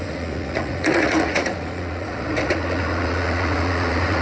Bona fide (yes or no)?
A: no